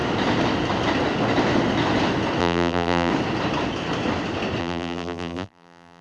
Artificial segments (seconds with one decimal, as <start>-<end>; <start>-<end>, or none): 2.4-3.1; 4.6-6.0